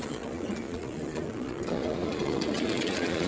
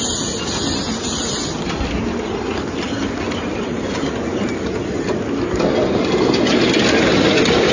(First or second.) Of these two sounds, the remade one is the first